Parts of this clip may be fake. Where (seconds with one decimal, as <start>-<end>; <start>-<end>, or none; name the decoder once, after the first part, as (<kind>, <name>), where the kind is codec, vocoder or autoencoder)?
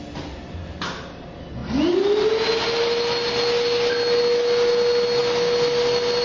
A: none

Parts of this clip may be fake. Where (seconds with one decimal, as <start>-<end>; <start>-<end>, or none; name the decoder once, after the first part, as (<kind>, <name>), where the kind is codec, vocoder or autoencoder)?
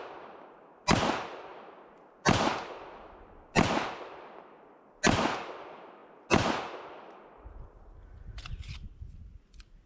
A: none